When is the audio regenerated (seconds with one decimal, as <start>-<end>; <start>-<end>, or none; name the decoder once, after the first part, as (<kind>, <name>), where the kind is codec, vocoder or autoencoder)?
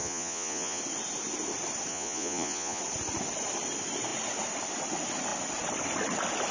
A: 0.0-0.8 (vocoder, Vocos); 1.9-2.8